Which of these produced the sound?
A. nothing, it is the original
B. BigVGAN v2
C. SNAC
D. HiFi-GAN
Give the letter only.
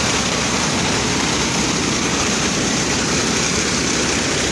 B